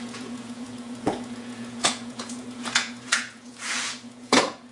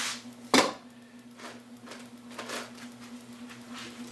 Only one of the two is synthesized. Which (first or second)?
first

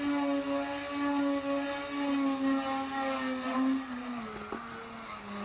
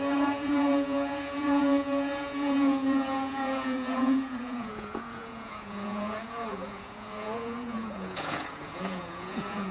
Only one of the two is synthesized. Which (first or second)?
second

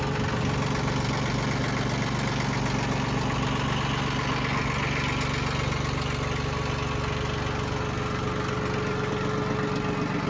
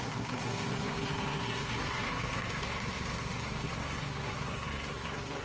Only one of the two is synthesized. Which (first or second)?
second